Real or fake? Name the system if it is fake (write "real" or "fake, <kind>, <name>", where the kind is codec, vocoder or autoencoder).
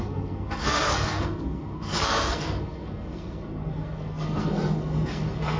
fake, codec, SNAC